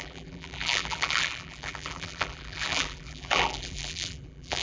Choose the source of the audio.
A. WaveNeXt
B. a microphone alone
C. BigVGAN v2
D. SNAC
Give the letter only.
C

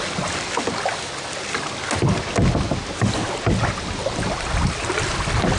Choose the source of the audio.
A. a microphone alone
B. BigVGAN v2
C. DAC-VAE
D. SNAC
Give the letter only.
A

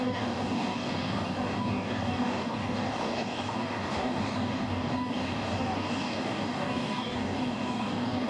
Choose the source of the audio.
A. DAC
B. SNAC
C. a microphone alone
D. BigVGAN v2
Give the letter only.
A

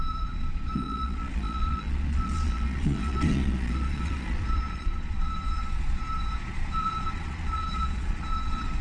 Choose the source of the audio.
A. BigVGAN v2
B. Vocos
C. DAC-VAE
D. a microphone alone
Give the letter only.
B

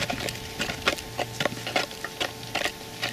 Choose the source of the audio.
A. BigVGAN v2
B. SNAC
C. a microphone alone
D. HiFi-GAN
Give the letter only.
C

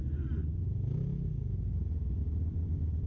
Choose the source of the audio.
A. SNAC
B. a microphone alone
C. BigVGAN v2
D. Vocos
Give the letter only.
B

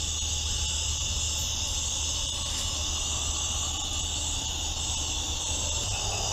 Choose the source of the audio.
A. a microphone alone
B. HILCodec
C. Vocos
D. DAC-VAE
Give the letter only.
A